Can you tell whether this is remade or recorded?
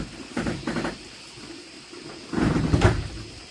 recorded